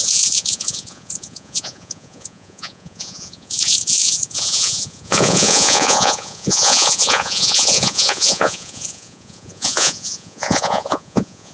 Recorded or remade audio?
remade